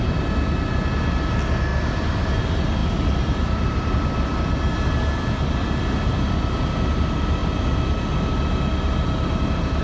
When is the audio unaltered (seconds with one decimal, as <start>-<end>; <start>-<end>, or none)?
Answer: 0.0-1.7; 2.4-2.8; 6.3-9.8